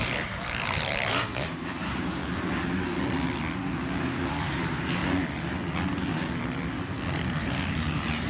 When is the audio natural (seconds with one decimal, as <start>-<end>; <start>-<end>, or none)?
2.2-4.0; 5.0-7.4